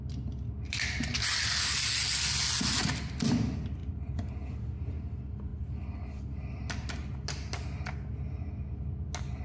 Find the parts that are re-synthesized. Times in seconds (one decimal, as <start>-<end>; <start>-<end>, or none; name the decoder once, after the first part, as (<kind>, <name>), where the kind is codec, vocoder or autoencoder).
none